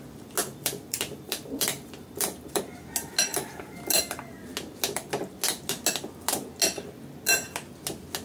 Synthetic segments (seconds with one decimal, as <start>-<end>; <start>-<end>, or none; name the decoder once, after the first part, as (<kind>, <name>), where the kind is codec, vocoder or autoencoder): 0.4-2.6 (vocoder, BigVGAN v2); 3.3-4.0